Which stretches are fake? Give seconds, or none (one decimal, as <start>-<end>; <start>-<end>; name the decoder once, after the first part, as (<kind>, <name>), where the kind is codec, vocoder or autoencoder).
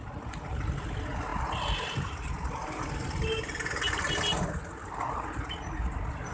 none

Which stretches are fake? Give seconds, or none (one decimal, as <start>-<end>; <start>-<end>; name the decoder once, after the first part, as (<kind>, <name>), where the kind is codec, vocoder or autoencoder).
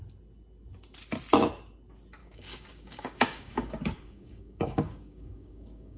2.2-6.0 (codec, DAC)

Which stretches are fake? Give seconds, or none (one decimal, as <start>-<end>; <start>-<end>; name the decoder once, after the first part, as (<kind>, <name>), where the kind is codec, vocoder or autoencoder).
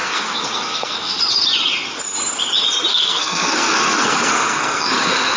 0.0-1.2 (codec, SNAC); 2.9-5.4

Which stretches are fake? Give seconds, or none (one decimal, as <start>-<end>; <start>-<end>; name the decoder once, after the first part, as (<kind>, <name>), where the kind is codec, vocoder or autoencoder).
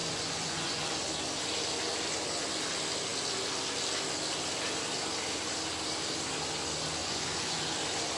0.0-0.8 (vocoder, Vocos); 7.0-7.6